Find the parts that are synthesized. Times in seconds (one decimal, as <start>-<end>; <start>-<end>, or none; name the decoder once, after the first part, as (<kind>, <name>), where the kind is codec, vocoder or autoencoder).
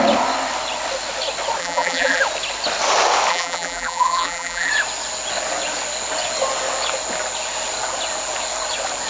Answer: 1.6-2.2 (vocoder, BigVGAN v2); 3.3-4.7